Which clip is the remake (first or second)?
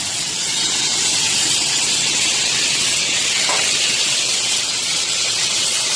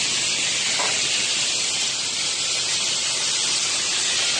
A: first